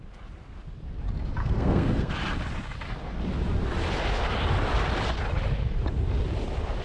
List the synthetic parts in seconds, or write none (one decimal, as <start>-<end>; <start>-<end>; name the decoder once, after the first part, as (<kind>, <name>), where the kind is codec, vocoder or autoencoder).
1.4-2.1 (codec, SNAC)